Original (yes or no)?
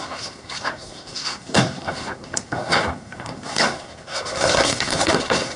no